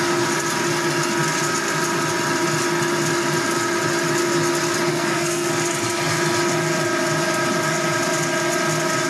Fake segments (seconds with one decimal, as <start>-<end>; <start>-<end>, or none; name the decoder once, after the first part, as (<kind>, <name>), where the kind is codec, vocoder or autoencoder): 4.9-5.5 (codec, SNAC)